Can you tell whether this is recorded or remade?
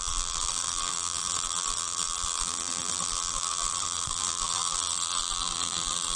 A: remade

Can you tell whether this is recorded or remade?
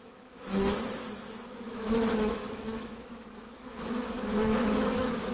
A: remade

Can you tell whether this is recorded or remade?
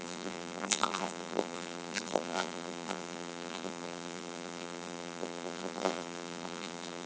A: remade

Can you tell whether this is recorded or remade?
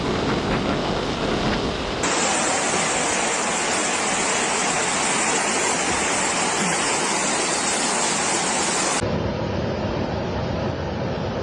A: recorded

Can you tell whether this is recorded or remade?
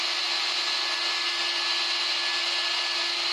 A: recorded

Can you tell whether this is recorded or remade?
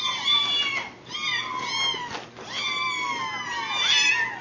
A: recorded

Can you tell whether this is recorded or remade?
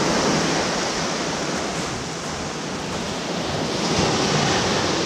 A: recorded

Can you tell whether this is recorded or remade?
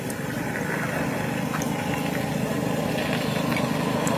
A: recorded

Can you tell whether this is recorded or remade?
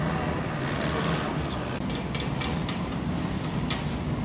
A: recorded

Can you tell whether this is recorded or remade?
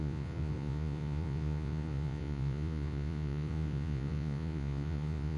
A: remade